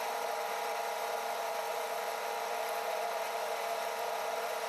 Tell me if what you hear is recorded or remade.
recorded